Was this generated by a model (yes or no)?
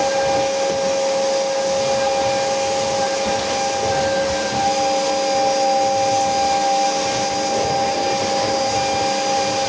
no